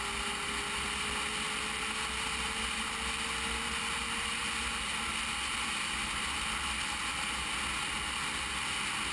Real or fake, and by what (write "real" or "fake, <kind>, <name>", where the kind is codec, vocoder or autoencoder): real